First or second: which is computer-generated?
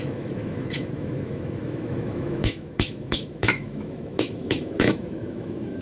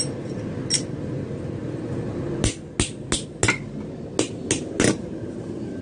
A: first